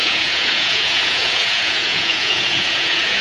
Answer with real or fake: fake